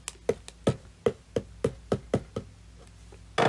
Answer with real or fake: real